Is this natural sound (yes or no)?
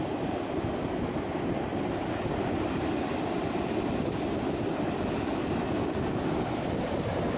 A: yes